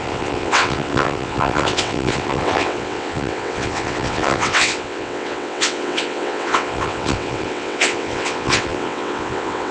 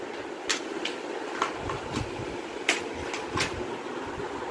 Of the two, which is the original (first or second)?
second